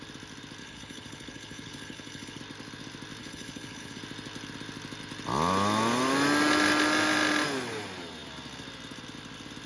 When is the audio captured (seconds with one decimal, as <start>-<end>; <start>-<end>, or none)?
0.0-0.6; 2.4-3.2; 4.0-9.7